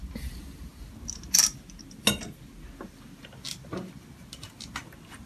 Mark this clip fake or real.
real